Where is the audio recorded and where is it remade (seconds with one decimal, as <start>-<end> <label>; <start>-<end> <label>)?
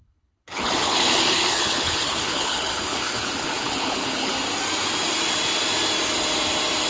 0.0-4.3 remade; 4.3-6.9 recorded